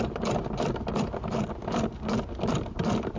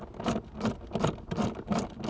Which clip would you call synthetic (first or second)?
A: first